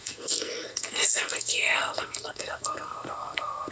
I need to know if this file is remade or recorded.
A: remade